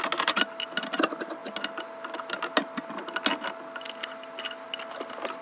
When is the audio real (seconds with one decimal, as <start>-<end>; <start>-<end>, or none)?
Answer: 0.0-5.4